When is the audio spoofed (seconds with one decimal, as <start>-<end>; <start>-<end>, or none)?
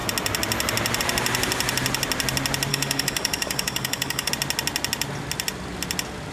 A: 2.7-4.3